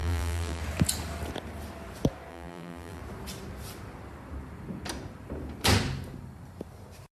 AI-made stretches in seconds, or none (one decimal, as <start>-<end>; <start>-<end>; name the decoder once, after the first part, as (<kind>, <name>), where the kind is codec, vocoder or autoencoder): 0.0-0.6 (vocoder, BigVGAN v2); 2.3-3.0